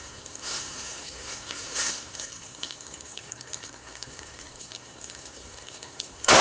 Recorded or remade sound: remade